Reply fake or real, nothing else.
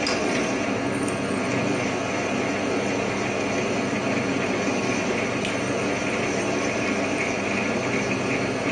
real